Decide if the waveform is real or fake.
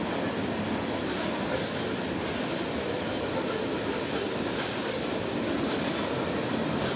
real